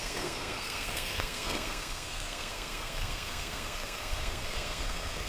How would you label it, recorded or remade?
remade